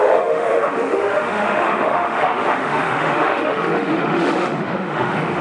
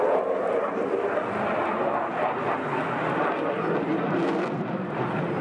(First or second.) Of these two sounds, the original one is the second